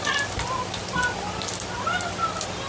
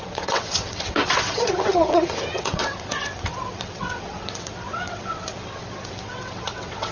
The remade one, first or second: second